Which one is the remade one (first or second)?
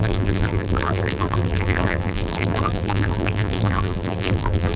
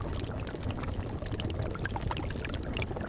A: first